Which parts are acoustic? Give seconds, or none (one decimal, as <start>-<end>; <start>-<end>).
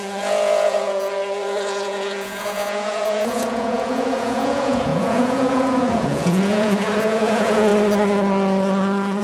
7.7-9.2